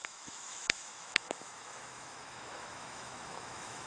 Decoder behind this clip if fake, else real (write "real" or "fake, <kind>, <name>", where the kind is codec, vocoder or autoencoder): fake, autoencoder, DAC-VAE